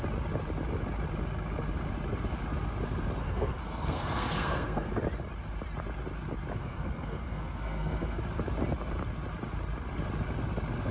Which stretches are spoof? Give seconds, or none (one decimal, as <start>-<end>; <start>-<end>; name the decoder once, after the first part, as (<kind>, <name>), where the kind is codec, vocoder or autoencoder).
3.2-4.9 (codec, SNAC); 6.6-8.2